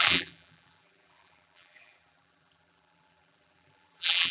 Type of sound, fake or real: fake